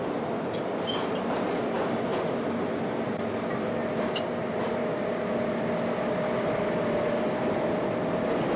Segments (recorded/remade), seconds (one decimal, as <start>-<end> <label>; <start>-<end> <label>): 0.0-8.6 recorded